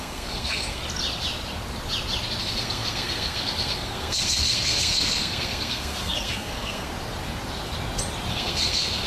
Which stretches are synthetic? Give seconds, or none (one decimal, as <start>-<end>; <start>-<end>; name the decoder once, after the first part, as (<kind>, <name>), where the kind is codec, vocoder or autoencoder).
0.0-0.8 (codec, SNAC); 2.4-6.9; 8.3-9.1